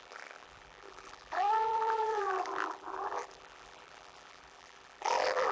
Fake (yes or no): yes